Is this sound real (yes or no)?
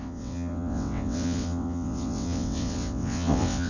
no